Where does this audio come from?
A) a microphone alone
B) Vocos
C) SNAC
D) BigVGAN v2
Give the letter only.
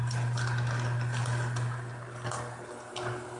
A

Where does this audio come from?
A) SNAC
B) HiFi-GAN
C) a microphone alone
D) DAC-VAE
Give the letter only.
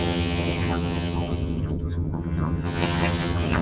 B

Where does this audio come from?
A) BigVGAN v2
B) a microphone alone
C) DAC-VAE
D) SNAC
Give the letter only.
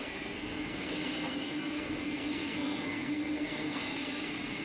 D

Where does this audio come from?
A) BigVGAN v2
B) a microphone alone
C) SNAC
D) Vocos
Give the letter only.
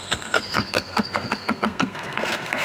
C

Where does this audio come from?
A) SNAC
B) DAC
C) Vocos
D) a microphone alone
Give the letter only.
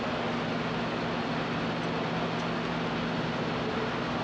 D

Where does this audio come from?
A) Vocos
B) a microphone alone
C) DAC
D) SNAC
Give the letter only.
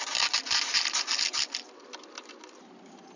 B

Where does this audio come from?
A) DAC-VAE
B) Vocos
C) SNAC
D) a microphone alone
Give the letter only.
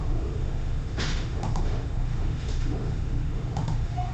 A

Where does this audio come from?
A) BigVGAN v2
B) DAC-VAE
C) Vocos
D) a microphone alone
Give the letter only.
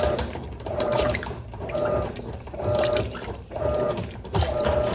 A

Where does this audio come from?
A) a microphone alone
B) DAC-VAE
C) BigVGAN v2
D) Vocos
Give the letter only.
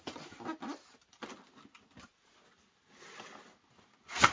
A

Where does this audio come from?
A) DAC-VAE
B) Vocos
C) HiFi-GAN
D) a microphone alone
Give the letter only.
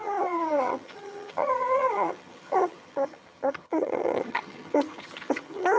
C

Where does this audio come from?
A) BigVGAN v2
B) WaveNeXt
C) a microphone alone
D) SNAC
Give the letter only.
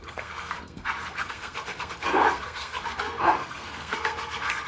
D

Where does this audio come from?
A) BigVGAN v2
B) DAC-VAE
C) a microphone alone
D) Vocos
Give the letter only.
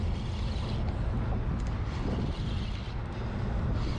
C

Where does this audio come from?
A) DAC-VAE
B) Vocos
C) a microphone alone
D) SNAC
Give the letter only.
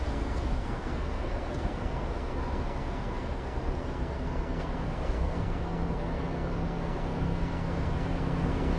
D